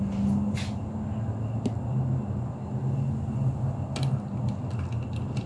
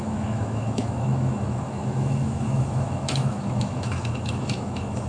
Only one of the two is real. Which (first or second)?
first